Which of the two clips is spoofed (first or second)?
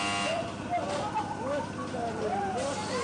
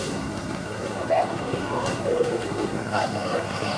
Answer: second